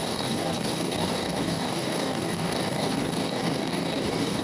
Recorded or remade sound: remade